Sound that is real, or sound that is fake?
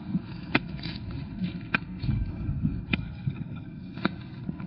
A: fake